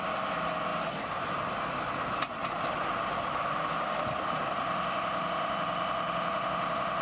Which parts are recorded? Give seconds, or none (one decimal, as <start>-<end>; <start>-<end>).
0.0-7.0